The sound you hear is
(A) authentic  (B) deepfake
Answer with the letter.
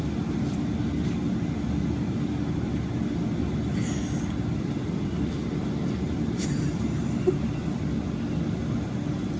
A